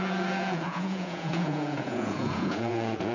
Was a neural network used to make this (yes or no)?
yes